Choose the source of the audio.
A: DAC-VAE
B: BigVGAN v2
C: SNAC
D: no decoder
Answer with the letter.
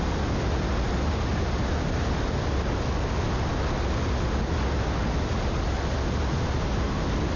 D